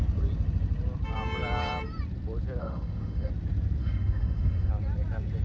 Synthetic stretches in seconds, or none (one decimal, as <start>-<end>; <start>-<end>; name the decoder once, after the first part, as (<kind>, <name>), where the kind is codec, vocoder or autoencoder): 2.6-3.3 (autoencoder, DAC-VAE); 3.8-4.7